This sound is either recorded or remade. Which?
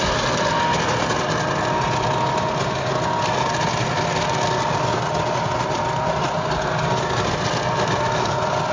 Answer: recorded